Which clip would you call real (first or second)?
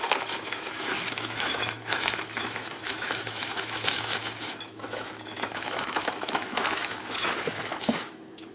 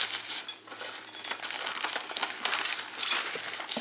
second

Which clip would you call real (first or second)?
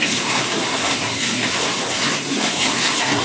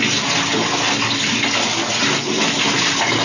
second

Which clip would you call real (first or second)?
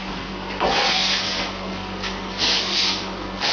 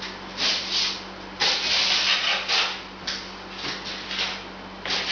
second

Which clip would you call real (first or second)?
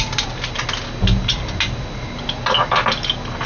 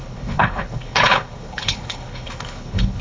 first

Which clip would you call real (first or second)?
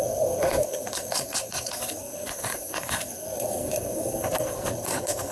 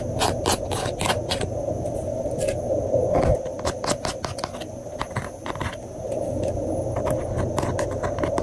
second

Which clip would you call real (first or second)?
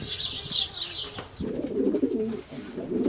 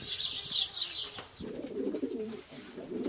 first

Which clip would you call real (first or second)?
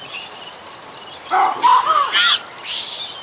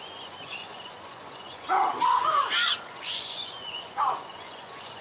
first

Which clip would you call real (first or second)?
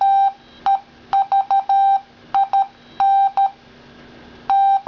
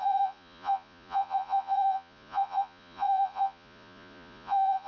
first